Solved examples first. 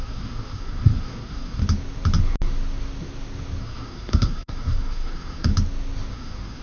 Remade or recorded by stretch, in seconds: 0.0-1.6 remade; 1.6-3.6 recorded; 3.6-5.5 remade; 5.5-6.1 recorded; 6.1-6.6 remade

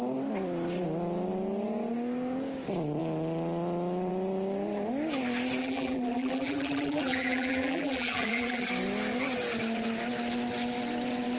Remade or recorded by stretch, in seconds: 0.0-5.6 recorded; 5.6-8.7 remade; 8.7-11.4 recorded

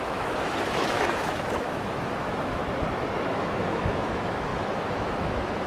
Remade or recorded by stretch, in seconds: 0.0-2.6 remade; 2.6-3.3 recorded; 3.3-5.7 remade

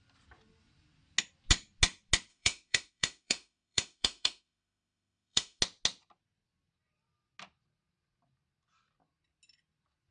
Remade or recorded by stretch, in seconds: 0.0-2.3 recorded; 2.3-5.6 remade; 5.6-10.1 recorded

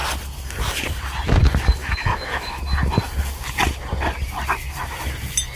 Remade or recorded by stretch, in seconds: 0.0-1.8 recorded; 1.8-2.6 remade; 2.6-5.6 recorded

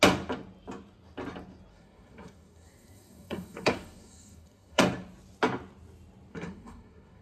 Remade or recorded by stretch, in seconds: 0.0-1.7 recorded; 1.7-4.8 remade; 4.8-6.3 recorded; 6.3-7.2 remade

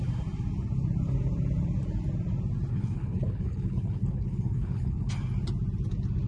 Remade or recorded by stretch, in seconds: 0.0-2.7 recorded; 2.7-5.1 remade; 5.1-6.3 recorded